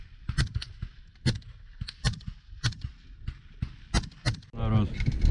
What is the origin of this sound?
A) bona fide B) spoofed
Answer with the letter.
A